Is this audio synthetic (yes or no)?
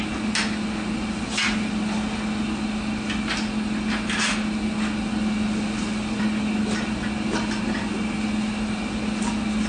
no